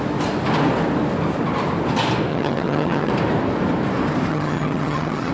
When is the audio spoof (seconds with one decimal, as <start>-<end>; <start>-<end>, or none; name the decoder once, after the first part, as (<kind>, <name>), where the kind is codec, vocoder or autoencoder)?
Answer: 2.3-3.1 (vocoder, HiFi-GAN); 4.3-5.3